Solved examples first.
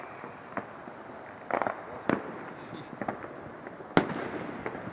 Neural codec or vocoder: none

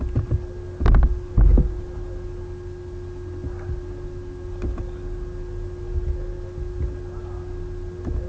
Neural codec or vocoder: none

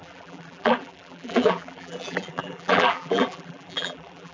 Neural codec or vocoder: vocoder, BigVGAN v2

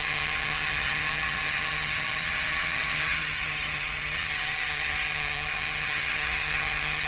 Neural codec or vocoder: vocoder, HiFi-GAN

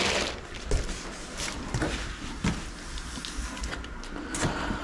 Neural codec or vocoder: none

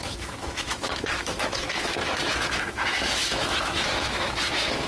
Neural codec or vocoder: autoencoder, DAC-VAE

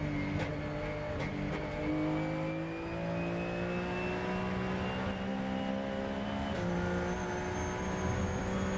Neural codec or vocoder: none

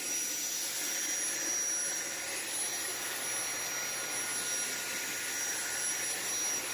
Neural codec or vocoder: none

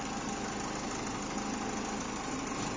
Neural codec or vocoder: none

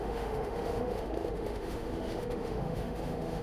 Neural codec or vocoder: autoencoder, DAC-VAE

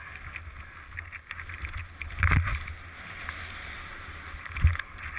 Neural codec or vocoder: none